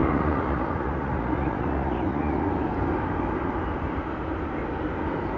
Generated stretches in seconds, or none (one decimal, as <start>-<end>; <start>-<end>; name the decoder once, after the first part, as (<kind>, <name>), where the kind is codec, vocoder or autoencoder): 0.0-2.5 (vocoder, Vocos)